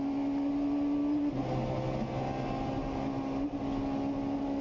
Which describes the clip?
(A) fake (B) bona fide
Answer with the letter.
B